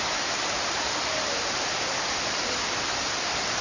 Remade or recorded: remade